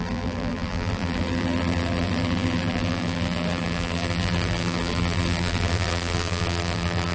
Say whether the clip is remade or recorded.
remade